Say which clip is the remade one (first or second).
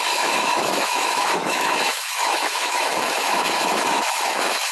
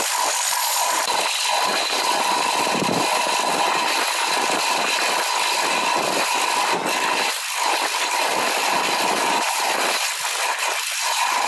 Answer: first